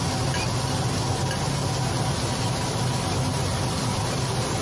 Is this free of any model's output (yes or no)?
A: yes